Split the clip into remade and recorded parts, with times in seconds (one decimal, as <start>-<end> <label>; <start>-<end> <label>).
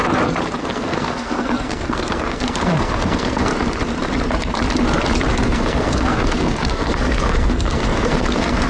0.0-0.6 recorded; 0.6-3.5 remade; 3.5-5.3 recorded; 5.3-8.7 remade